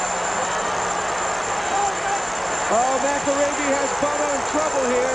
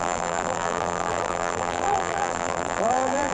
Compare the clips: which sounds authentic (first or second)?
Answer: first